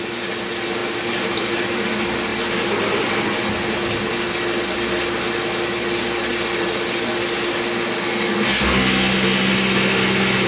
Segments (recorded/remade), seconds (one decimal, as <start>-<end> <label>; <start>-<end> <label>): 0.0-0.8 recorded; 0.8-1.8 remade; 1.8-10.5 recorded